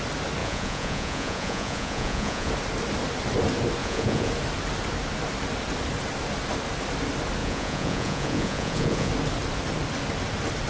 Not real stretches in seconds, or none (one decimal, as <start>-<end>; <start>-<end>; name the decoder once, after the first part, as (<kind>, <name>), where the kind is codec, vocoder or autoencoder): 0.4-2.5 (vocoder, Vocos); 3.8-4.3; 7.4-9.1